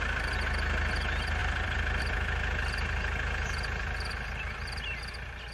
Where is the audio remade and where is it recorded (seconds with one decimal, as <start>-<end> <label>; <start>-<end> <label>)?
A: 0.0-1.4 recorded; 1.4-2.0 remade; 2.0-5.5 recorded